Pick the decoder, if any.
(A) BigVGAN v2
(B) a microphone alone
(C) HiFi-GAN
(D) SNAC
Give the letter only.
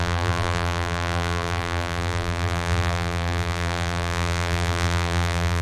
A